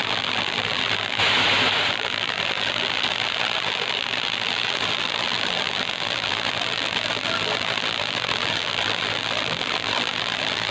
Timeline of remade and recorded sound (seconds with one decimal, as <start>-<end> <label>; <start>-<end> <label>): 0.0-1.2 remade; 1.2-1.9 recorded; 1.9-10.7 remade